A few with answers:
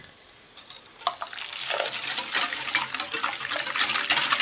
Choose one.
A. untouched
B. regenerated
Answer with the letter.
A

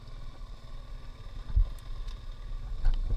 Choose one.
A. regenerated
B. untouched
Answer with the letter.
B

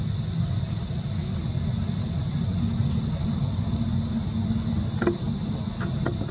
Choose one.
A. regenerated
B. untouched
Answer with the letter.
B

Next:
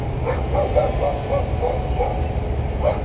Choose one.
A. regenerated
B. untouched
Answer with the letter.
B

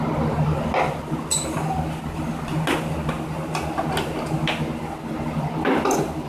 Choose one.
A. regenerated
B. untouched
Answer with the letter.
B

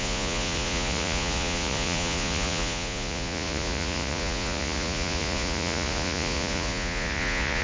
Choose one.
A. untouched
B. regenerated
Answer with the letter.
B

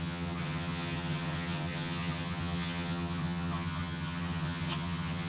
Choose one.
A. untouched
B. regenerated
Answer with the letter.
B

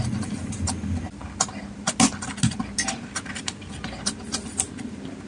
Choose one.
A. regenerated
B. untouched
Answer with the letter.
B